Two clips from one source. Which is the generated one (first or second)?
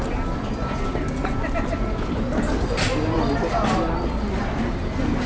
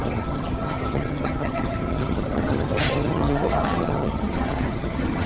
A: second